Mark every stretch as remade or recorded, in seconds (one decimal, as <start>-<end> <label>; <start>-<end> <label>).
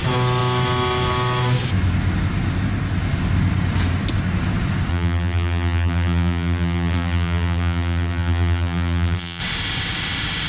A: 0.0-4.9 recorded; 4.9-9.4 remade; 9.4-10.5 recorded